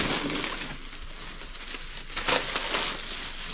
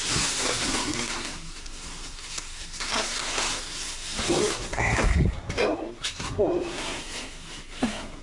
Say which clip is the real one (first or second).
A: first